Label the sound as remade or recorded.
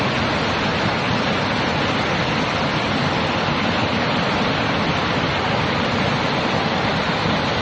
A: recorded